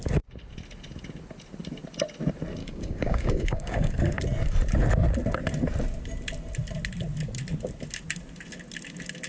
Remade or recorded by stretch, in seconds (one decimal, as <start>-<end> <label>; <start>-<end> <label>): 0.0-2.6 recorded; 2.6-4.0 remade; 4.0-9.3 recorded